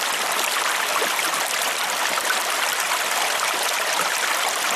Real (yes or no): no